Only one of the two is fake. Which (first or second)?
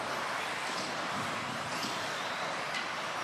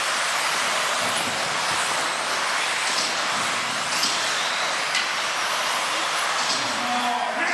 first